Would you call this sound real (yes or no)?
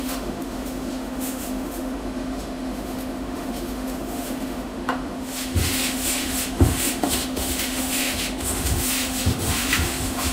no